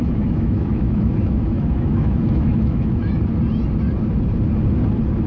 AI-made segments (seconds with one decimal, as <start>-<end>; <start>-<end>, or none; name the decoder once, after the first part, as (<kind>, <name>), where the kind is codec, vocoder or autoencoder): 0.0-3.2 (autoencoder, DAC-VAE)